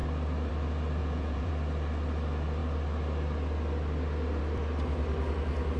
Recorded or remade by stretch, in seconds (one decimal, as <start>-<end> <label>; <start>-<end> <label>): 0.0-1.0 recorded; 1.0-1.5 remade; 1.5-5.8 recorded